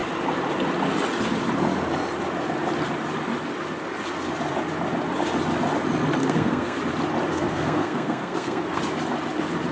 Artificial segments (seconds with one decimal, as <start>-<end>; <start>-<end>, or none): 6.2-6.8; 7.3-8.8